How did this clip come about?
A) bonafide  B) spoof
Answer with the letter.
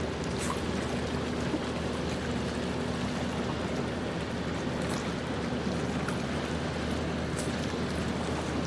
A